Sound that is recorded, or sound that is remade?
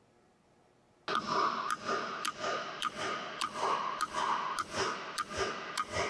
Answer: recorded